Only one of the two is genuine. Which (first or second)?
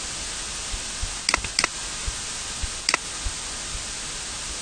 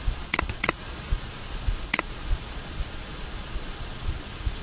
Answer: first